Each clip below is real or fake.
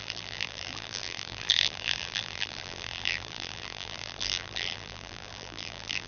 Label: fake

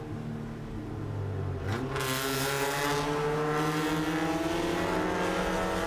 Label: real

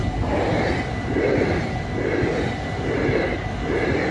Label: real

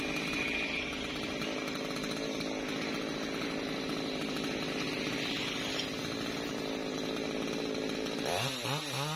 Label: real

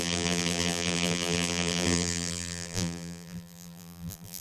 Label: fake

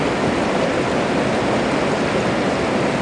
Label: real